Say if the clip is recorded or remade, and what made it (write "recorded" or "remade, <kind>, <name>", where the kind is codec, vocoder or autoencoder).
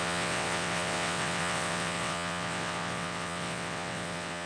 remade, vocoder, WaveNeXt